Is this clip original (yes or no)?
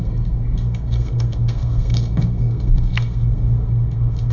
no